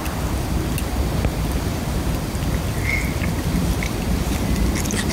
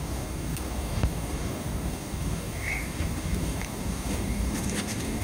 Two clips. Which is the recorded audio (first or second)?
first